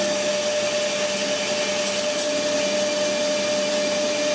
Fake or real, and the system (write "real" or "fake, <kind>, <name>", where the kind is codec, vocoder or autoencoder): real